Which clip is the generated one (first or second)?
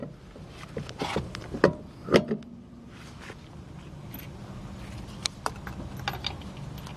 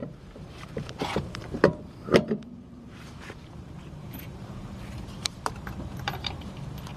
second